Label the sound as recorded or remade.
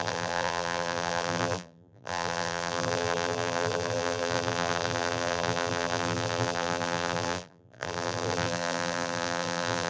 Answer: remade